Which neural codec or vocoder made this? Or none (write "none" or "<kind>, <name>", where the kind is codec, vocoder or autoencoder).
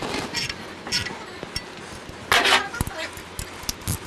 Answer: none